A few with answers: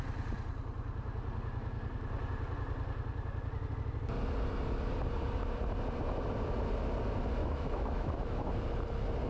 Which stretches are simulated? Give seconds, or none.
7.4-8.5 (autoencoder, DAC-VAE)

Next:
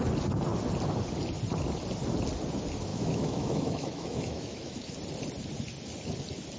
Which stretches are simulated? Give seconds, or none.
2.9-4.9 (autoencoder, DAC-VAE)